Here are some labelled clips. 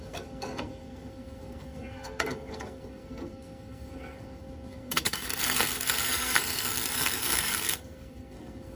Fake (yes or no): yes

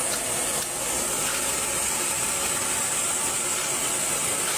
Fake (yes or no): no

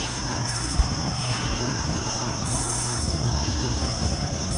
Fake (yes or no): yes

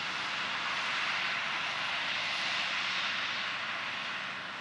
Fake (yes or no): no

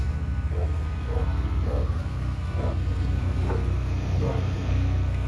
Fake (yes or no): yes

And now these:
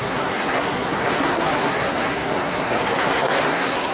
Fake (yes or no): yes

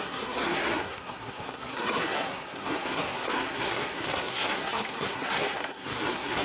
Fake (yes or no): yes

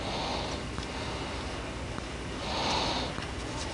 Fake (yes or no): no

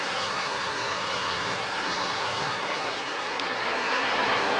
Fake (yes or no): yes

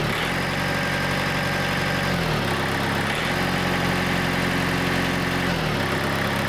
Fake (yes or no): no